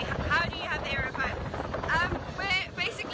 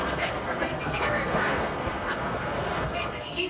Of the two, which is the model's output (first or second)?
second